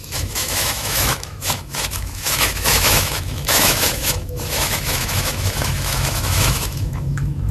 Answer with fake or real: fake